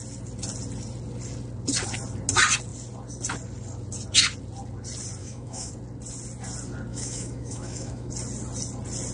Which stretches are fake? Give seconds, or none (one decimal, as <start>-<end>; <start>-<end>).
5.2-5.7; 6.9-8.1